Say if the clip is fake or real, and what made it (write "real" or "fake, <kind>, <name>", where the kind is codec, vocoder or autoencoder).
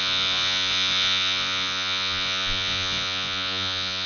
fake, vocoder, Vocos